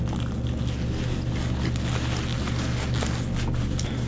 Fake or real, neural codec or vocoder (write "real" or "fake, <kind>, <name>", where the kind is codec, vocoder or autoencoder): real